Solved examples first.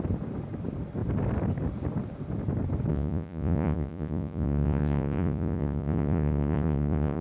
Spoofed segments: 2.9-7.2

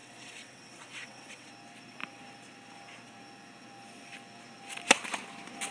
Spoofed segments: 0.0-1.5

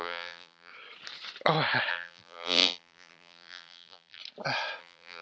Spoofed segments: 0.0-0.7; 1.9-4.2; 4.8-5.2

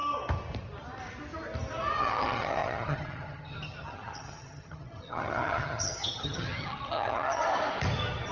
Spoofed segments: 2.0-7.4

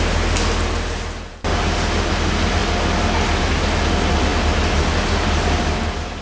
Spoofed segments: none

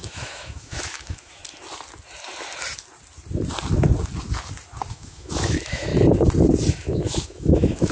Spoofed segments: 0.0-1.4; 4.9-5.9; 6.7-7.9